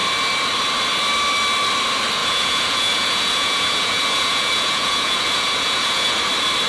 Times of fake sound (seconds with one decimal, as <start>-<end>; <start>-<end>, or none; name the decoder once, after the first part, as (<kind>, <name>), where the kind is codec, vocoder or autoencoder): 2.2-6.2 (vocoder, Vocos)